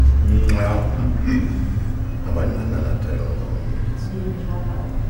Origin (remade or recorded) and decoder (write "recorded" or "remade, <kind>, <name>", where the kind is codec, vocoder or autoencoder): recorded